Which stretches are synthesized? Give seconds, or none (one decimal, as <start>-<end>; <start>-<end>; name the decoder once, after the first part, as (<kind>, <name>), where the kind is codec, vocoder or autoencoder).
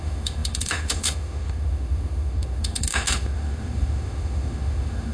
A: 0.0-5.1 (autoencoder, DAC-VAE)